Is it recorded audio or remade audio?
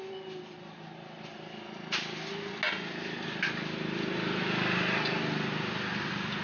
recorded